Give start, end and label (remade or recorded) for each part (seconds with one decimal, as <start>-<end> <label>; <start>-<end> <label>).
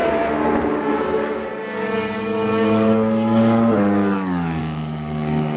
0.0-0.6 recorded; 0.6-5.6 remade